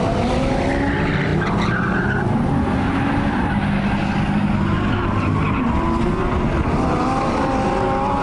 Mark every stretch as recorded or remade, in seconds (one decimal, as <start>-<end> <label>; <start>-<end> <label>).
0.0-8.2 recorded